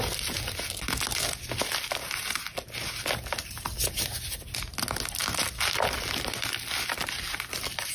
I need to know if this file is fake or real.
real